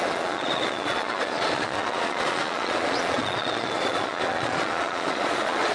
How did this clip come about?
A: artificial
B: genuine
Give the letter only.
A